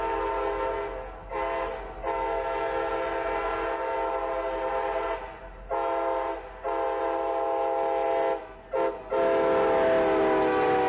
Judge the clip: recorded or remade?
recorded